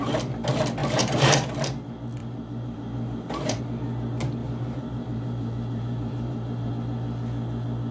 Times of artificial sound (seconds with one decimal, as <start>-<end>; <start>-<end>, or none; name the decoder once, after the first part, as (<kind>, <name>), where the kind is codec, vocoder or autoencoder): 0.8-1.5 (vocoder, BigVGAN v2); 2.2-3.6; 4.4-6.7